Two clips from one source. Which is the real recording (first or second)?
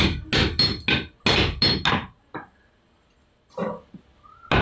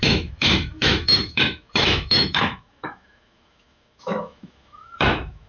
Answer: first